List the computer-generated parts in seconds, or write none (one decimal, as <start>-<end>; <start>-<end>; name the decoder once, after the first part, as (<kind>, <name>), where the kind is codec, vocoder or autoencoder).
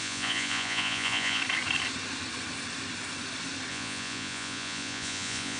0.0-1.4 (vocoder, Vocos); 3.7-5.6